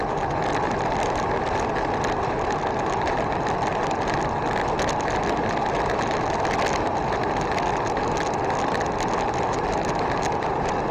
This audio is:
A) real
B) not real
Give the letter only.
A